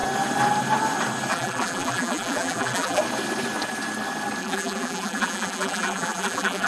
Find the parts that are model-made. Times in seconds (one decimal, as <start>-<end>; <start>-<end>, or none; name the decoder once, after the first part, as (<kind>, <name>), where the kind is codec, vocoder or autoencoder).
1.3-3.0 (vocoder, BigVGAN v2); 4.4-6.7